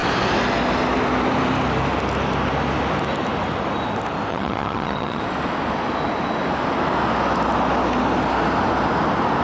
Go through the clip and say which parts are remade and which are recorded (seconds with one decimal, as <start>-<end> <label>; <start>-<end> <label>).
0.0-4.3 recorded; 4.3-5.2 remade; 5.2-9.4 recorded